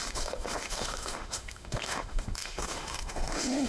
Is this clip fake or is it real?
fake